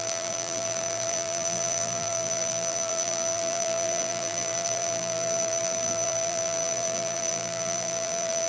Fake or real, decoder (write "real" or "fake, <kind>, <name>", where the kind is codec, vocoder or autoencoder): fake, vocoder, BigVGAN v2